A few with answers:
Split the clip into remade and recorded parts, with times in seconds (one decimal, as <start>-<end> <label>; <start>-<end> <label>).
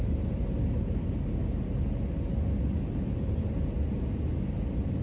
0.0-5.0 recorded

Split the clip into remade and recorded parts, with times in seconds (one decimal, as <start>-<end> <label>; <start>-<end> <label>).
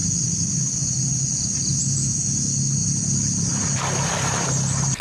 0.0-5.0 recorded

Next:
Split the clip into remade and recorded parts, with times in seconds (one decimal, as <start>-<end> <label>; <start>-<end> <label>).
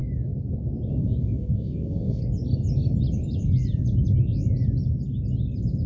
0.0-0.9 recorded; 0.9-2.2 remade; 2.2-5.9 recorded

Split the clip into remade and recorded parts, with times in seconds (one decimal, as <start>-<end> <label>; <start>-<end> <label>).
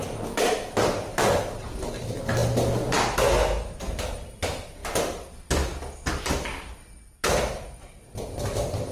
0.0-1.1 recorded; 1.1-1.7 remade; 1.7-8.9 recorded